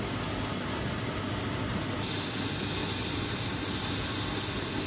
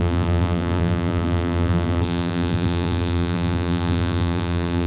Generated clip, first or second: second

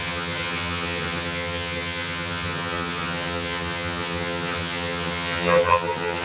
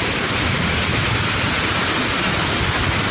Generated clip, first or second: first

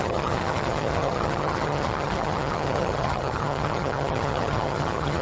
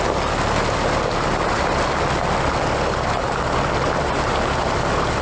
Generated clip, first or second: first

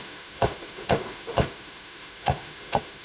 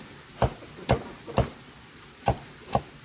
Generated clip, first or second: first